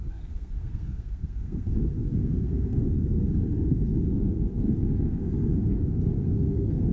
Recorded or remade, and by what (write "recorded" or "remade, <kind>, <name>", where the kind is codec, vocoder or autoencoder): remade, codec, SNAC